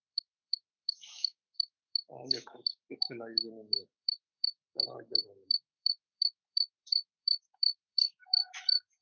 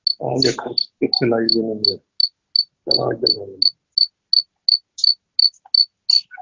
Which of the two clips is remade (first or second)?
first